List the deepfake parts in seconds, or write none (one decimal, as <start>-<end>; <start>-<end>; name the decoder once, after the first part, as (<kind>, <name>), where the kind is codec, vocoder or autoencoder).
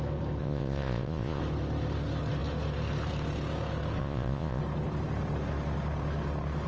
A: 0.4-1.4 (vocoder, Vocos); 4.0-4.6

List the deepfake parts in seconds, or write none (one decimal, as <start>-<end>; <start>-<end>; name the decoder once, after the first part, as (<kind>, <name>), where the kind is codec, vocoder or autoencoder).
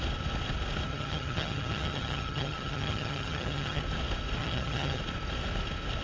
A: 0.9-3.8 (vocoder, HiFi-GAN); 4.4-5.0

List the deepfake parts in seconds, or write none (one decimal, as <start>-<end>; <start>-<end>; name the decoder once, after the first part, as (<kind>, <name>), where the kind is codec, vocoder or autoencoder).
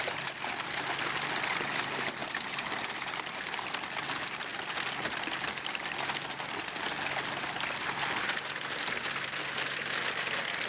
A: none